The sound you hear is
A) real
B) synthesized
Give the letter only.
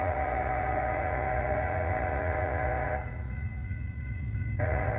B